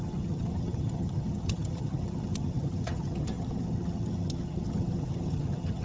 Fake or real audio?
fake